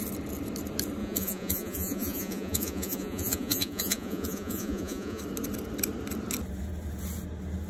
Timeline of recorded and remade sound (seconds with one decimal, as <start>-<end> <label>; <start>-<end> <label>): 0.0-1.0 recorded; 1.0-5.2 remade; 5.2-7.7 recorded